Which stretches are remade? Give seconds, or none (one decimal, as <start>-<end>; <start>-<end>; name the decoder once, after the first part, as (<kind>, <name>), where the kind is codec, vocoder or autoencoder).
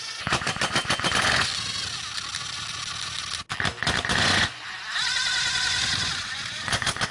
0.0-1.5 (vocoder, Vocos); 3.8-7.1